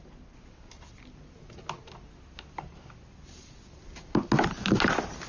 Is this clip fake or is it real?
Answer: real